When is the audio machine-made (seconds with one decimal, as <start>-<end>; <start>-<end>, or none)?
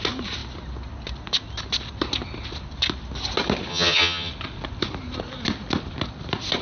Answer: 3.7-4.3